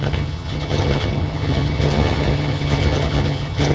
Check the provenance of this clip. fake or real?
fake